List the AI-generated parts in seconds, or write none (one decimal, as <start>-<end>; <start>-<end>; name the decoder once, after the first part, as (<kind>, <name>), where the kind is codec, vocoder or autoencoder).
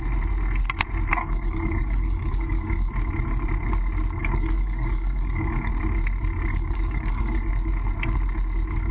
1.1-2.9 (codec, DAC); 4.2-5.7; 6.5-7.5